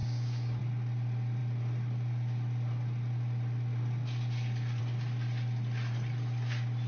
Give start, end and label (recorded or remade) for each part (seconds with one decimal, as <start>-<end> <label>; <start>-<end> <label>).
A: 0.0-0.6 remade; 0.6-6.9 recorded